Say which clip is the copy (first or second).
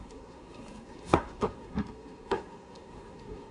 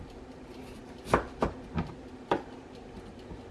first